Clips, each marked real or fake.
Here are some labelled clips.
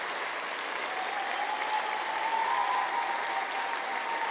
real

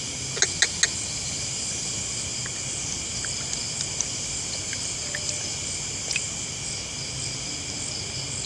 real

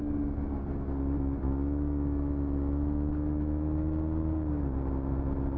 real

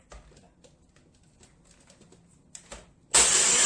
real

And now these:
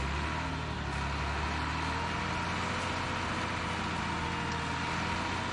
real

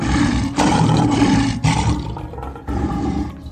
fake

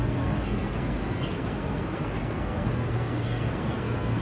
fake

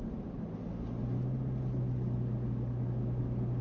real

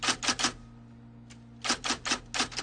real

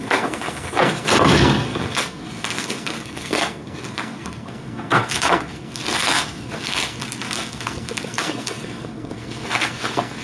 fake